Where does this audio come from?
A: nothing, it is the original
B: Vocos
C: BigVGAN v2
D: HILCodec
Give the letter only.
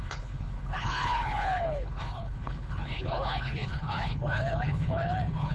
D